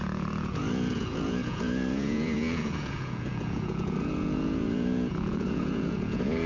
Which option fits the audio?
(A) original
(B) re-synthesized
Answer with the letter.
B